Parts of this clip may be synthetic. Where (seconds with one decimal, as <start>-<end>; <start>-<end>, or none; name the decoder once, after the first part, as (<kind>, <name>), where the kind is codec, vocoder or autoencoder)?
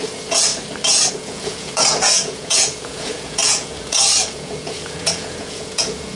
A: 0.0-0.5 (vocoder, Vocos); 1.1-6.2